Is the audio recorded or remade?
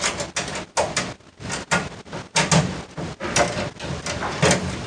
recorded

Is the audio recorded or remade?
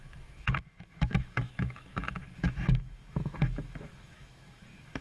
remade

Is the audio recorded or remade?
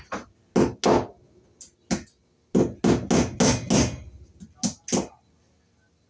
recorded